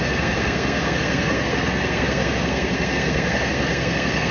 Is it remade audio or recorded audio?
remade